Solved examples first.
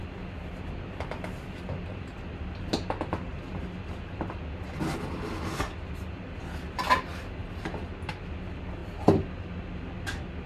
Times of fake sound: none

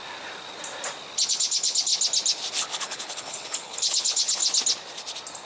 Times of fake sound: 1.3-1.9 (codec, HILCodec); 2.5-4.4

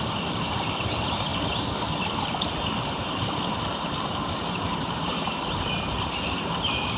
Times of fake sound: 0.0-1.3 (vocoder, BigVGAN v2); 4.5-7.0

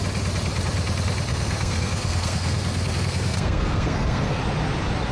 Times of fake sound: 1.3-4.4 (codec, SNAC)

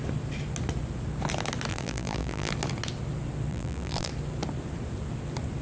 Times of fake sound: 1.7-2.5 (vocoder, BigVGAN v2); 3.5-4.1